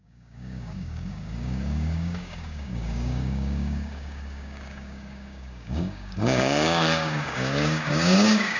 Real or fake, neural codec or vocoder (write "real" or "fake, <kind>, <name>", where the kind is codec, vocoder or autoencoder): fake, codec, DAC